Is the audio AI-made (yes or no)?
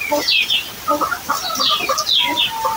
no